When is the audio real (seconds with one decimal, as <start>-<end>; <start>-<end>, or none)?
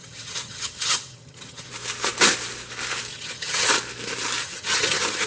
1.7-3.1; 3.7-4.4